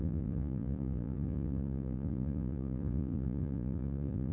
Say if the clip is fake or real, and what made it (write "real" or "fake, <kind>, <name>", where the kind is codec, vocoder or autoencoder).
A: fake, vocoder, Vocos